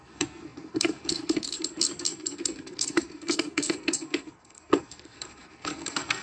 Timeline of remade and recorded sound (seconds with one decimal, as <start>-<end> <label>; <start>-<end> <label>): 0.0-6.2 remade